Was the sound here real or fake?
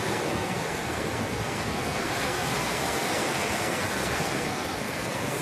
fake